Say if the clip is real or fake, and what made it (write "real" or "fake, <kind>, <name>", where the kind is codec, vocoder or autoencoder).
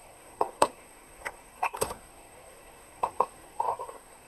fake, codec, SNAC